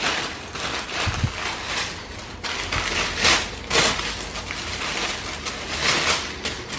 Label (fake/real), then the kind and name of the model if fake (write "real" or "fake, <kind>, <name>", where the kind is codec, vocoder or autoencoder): real